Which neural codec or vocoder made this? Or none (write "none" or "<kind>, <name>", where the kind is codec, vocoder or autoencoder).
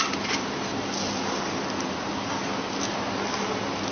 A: none